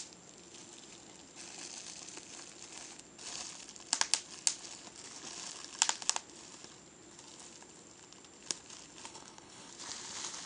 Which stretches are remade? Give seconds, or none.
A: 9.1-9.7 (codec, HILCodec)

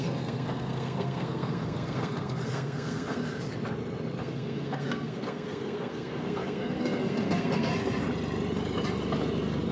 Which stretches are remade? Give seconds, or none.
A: 0.0-3.2 (codec, SNAC); 4.2-7.7

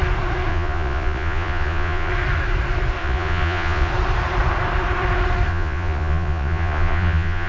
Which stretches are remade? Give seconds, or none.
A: 0.5-2.1 (vocoder, Vocos); 3.0-3.9; 5.5-7.5

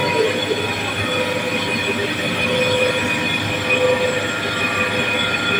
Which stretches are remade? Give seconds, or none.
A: none

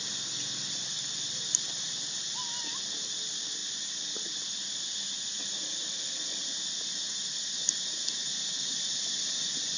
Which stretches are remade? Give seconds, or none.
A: none